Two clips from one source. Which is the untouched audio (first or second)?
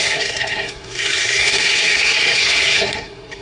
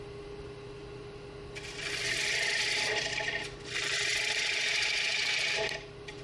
second